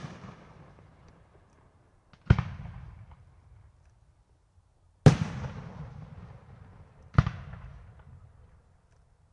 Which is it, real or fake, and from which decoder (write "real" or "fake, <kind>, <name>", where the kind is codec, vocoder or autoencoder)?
real